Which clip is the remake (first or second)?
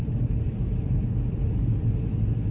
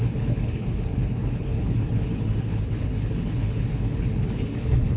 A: second